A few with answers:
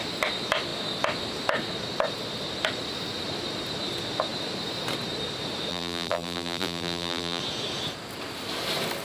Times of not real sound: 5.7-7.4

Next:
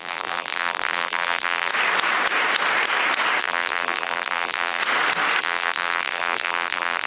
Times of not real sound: 0.0-1.7; 3.4-4.8; 5.4-7.1

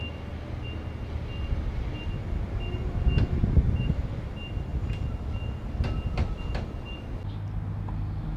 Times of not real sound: 3.4-4.0

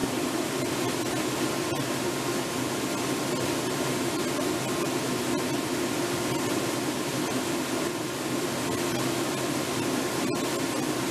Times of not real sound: 0.0-0.6

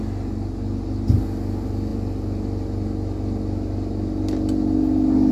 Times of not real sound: none

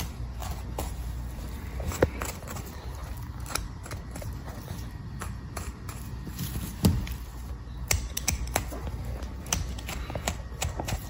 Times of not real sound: 0.0-0.4; 1.9-3.0; 3.6-7.3; 9.9-11.1